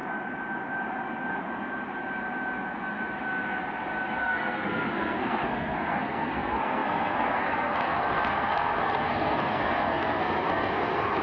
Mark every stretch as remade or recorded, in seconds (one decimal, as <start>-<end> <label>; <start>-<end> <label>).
0.0-4.2 recorded; 4.2-11.2 remade